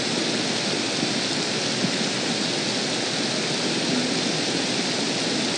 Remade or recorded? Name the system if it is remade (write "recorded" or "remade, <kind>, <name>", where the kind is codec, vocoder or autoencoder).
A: recorded